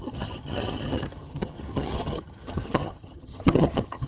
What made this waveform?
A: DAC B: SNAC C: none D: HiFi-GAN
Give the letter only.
D